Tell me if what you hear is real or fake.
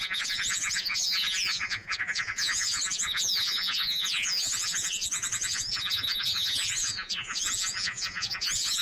fake